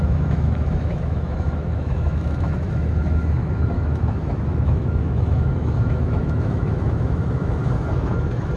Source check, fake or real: fake